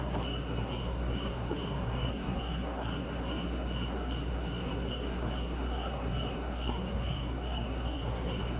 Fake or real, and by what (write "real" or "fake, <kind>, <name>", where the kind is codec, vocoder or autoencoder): fake, codec, SNAC